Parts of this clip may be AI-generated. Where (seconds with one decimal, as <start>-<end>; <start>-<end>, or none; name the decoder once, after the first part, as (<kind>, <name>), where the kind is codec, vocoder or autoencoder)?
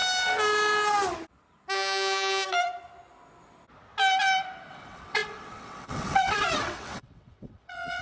4.7-8.0 (vocoder, WaveNeXt)